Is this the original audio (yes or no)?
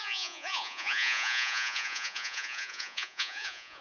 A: no